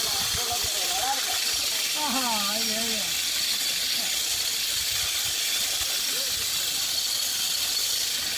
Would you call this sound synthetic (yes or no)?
no